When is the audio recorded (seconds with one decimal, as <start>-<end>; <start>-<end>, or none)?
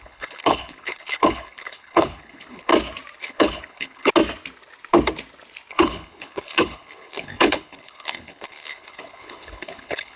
2.7-3.2; 4.1-5.7